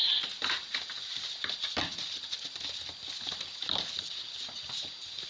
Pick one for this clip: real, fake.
real